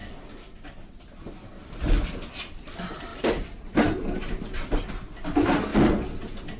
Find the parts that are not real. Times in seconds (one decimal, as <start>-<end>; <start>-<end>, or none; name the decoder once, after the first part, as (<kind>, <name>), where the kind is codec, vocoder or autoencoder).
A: 3.1-4.9 (vocoder, BigVGAN v2)

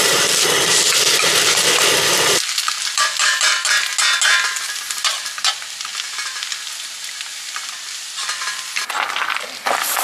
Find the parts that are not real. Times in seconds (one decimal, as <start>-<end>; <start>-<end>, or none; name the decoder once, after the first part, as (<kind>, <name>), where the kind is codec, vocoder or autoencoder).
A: 0.0-3.9 (vocoder, BigVGAN v2); 4.9-10.0

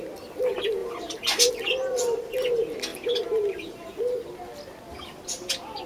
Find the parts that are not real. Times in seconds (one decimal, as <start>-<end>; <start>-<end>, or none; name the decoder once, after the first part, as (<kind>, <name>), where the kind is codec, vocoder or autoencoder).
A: 0.8-1.5 (vocoder, BigVGAN v2); 2.9-3.9

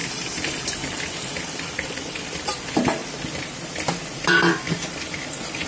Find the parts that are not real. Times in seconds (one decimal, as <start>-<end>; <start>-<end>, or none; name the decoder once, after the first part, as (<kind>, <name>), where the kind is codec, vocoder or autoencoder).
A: 1.4-3.0 (vocoder, BigVGAN v2); 4.1-5.7

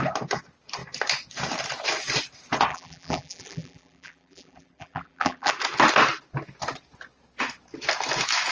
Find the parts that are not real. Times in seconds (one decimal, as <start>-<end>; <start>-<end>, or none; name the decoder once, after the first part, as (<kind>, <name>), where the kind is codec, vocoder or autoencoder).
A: 2.7-5.5 (vocoder, BigVGAN v2)

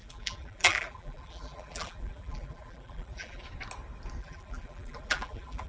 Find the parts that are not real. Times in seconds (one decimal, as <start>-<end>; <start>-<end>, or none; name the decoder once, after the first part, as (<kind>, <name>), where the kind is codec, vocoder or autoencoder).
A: 0.0-3.4 (vocoder, BigVGAN v2); 4.2-5.7